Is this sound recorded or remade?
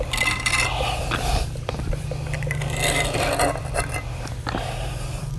remade